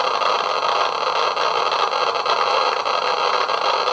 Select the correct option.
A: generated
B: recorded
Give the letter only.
A